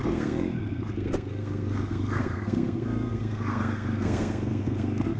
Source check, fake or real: fake